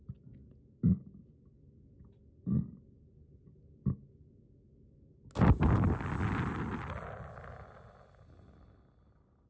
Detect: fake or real real